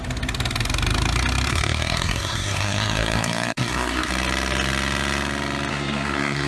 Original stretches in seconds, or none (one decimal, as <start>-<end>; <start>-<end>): 0.0-1.5; 4.1-5.7